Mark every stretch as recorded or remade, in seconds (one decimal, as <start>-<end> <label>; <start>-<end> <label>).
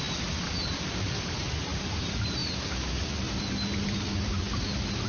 0.0-5.1 recorded